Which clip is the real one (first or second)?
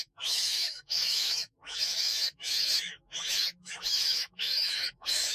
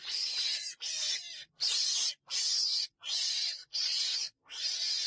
second